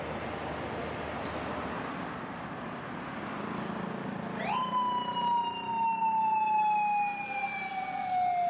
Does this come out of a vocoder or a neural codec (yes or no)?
no